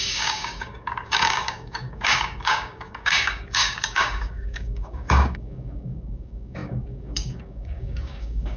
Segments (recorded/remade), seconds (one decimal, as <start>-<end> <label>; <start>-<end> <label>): 0.0-8.6 remade